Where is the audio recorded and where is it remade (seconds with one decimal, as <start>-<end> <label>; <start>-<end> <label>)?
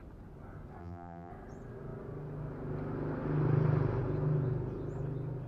0.0-0.8 recorded; 0.8-1.3 remade; 1.3-5.5 recorded